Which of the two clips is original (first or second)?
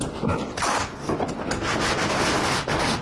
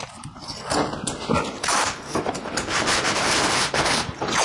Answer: first